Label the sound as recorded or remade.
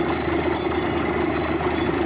remade